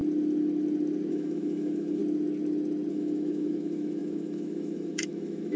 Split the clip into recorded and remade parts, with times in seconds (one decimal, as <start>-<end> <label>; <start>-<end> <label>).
0.0-1.1 recorded; 1.1-2.0 remade; 2.0-2.9 recorded; 2.9-5.6 remade